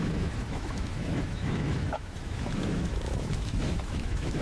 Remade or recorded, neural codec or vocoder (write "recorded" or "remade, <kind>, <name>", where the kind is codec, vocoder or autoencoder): remade, autoencoder, DAC-VAE